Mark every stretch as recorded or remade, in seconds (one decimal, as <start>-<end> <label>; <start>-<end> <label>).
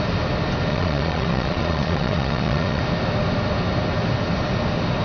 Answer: 0.0-0.7 recorded; 0.7-2.8 remade; 2.8-5.0 recorded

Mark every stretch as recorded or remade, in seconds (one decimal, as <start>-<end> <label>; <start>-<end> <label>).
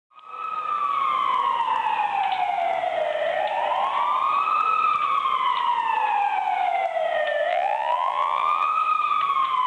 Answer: 0.0-7.5 recorded; 7.5-8.9 remade; 8.9-9.7 recorded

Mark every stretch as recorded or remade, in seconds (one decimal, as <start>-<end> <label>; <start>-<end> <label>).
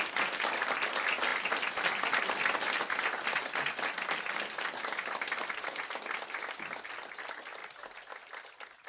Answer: 0.0-8.9 recorded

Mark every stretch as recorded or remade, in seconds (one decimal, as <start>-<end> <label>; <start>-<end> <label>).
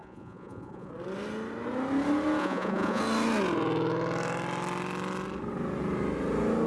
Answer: 0.0-0.9 remade; 0.9-2.4 recorded; 2.4-3.0 remade; 3.0-6.7 recorded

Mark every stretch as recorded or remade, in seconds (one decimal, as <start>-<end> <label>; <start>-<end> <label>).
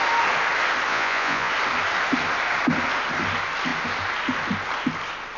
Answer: 0.0-0.9 recorded; 0.9-1.5 remade; 1.5-5.4 recorded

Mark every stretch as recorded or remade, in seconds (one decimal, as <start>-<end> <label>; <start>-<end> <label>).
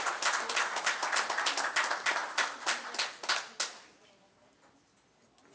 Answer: 0.0-5.5 recorded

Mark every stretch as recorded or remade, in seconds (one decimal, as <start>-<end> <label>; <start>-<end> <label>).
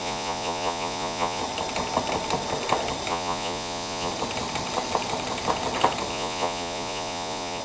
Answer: 0.0-1.4 remade; 1.4-3.1 recorded; 3.1-4.1 remade; 4.1-6.1 recorded; 6.1-7.6 remade